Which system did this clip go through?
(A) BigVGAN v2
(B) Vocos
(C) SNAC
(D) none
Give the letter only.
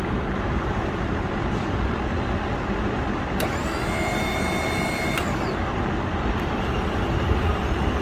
A